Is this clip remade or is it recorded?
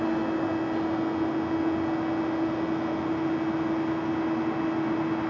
recorded